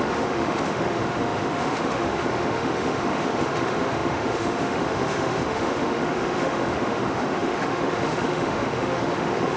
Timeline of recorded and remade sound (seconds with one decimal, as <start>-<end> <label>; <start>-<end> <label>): 0.0-9.6 remade